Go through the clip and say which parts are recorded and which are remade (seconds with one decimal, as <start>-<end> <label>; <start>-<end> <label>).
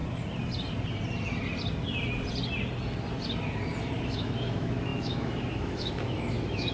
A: 0.0-4.0 recorded; 4.0-6.7 remade